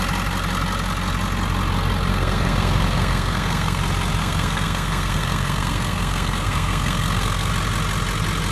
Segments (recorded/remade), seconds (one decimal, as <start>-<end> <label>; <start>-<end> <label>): 0.0-2.1 recorded; 2.1-3.8 remade; 3.8-4.2 recorded; 4.2-7.5 remade; 7.5-8.5 recorded